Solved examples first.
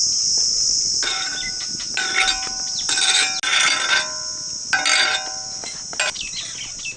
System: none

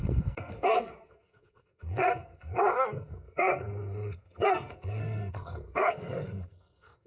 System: codec, SNAC